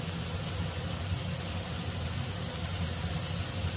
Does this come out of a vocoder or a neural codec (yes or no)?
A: no